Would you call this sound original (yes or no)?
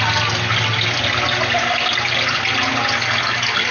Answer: yes